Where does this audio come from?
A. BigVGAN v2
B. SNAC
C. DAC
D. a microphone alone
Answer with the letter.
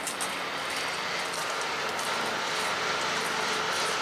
D